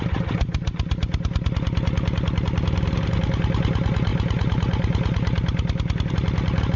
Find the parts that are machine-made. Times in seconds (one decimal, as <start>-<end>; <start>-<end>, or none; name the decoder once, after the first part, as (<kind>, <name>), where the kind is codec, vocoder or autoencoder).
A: none

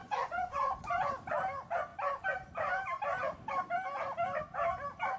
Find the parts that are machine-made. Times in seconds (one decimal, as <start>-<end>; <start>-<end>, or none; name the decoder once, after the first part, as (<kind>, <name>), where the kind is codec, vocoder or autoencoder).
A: 0.0-1.1 (vocoder, Vocos)

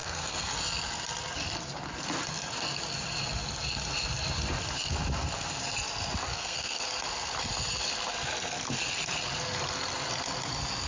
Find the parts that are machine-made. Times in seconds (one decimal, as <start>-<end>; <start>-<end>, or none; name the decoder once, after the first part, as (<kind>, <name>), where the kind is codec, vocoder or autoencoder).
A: 0.0-0.5 (codec, SNAC); 6.3-6.8

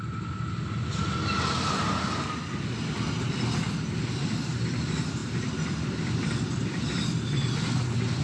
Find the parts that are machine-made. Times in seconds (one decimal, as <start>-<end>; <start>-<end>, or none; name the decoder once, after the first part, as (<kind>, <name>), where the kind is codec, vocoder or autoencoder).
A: none

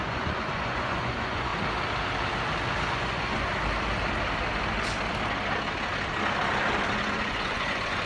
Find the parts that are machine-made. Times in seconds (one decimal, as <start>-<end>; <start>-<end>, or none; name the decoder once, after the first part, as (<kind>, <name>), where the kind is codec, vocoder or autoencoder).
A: 0.0-1.5 (vocoder, Vocos); 2.9-3.5; 6.9-8.1

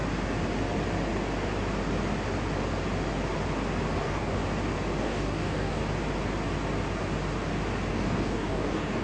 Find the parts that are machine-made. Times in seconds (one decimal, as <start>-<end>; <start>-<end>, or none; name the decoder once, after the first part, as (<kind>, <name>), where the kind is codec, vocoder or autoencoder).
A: 4.0-4.4 (codec, DAC); 5.0-5.8; 7.9-9.0

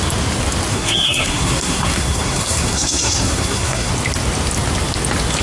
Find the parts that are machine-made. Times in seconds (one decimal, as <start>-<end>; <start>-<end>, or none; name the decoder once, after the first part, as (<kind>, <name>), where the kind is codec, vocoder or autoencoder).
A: 0.7-3.9 (codec, SNAC)